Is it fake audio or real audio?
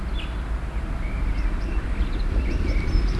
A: real